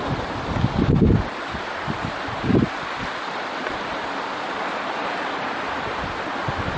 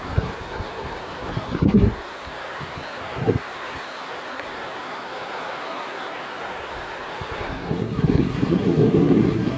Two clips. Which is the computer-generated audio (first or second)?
second